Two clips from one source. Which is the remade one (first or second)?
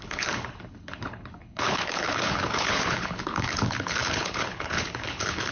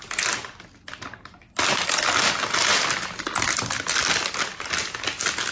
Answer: first